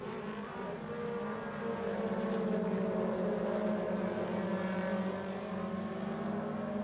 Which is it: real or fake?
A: real